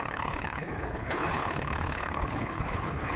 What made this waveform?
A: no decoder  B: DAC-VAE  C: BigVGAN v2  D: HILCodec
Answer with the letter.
D